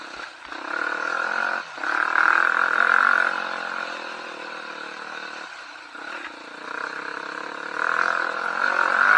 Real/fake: real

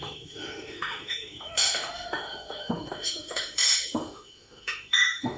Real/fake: fake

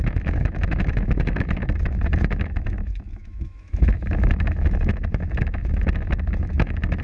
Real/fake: fake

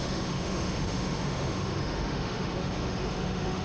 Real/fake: fake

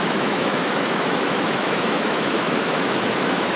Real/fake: fake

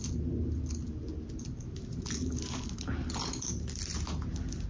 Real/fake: real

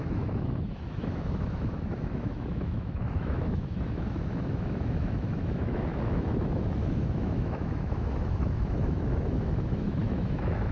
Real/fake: fake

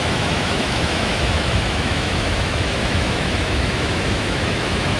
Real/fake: fake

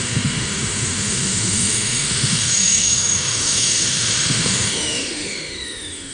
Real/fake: fake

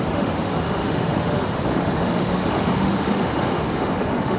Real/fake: fake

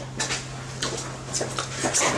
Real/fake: real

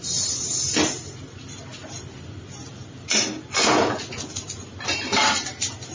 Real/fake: real